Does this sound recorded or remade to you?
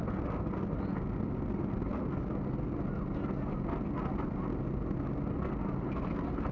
recorded